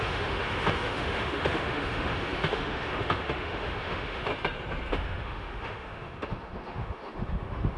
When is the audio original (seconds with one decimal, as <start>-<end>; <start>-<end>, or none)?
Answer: 4.3-4.9

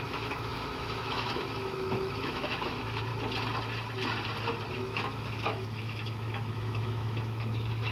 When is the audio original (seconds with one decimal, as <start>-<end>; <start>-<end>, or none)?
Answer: 3.1-4.7

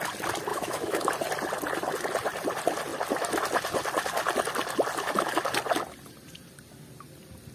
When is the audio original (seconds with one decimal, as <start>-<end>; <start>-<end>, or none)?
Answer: 0.0-0.5; 1.1-7.5